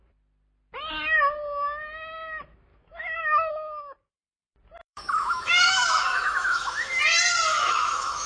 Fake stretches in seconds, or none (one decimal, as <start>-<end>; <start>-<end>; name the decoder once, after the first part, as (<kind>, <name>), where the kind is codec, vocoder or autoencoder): 2.7-3.5 (autoencoder, DAC-VAE); 4.8-7.0; 7.5-8.3